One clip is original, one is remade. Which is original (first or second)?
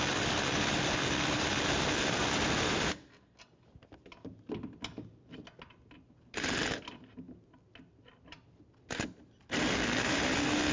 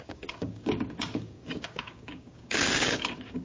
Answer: first